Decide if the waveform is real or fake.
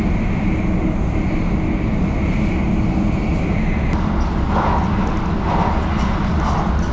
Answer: real